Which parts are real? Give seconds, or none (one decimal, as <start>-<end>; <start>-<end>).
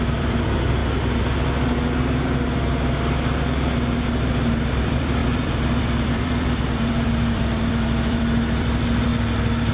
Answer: 0.8-4.7; 9.1-9.7